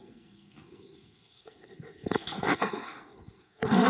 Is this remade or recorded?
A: remade